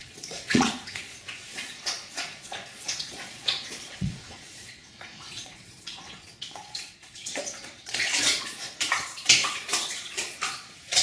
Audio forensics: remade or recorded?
remade